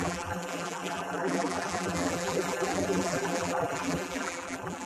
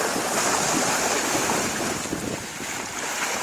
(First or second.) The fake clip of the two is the first